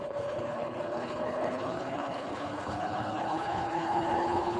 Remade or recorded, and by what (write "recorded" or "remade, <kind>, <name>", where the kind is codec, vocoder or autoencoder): remade, codec, HILCodec